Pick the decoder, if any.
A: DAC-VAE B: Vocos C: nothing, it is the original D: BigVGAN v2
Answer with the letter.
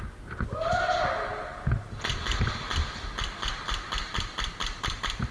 C